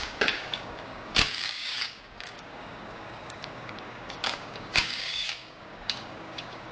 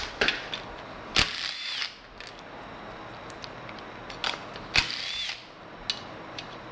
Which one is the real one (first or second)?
second